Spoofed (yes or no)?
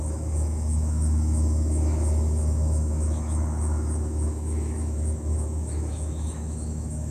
yes